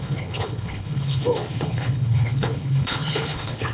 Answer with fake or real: fake